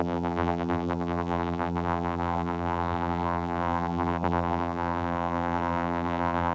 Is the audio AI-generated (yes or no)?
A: yes